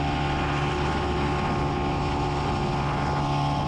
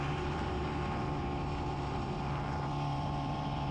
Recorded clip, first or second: first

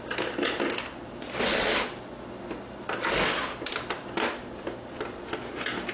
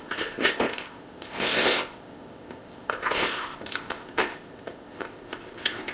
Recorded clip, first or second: first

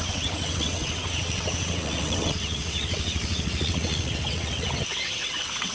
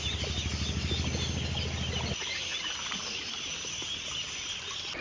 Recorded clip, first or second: second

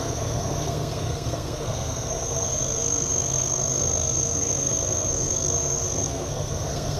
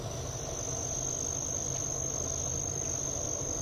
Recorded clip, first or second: second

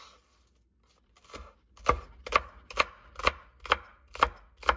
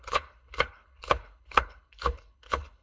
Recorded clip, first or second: first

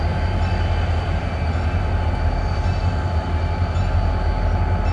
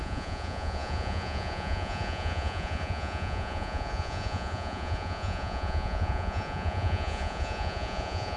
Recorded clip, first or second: first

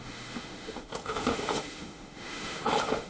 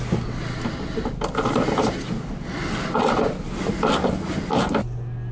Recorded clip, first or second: second